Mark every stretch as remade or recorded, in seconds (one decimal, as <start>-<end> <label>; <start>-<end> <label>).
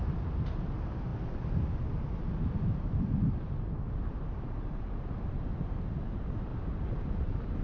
0.0-1.1 remade; 1.1-4.0 recorded; 4.0-5.5 remade; 5.5-6.0 recorded; 6.0-6.5 remade; 6.5-7.1 recorded; 7.1-7.6 remade